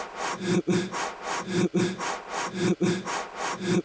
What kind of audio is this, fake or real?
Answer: real